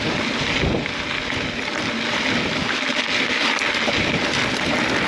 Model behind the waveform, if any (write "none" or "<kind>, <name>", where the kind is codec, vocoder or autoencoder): none